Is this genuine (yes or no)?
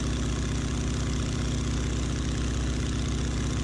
yes